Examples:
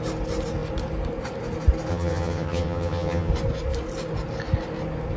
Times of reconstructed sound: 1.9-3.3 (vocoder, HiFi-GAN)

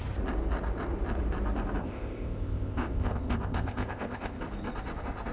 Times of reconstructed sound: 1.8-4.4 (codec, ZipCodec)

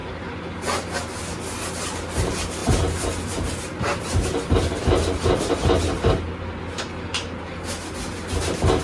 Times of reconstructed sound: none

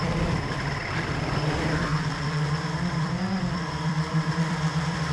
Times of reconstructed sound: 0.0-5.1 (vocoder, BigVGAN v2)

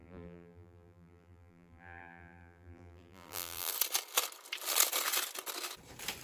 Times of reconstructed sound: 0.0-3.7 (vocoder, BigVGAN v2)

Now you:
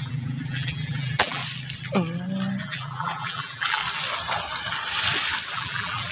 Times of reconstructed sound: 0.0-1.4 (vocoder, BigVGAN v2); 2.6-3.8; 5.5-6.1

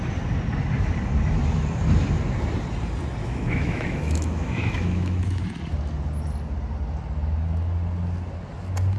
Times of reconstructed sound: 3.2-5.4 (autoencoder, DAC-VAE)

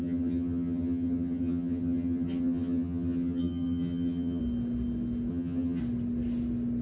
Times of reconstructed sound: 0.0-4.4 (vocoder, HiFi-GAN); 5.3-5.8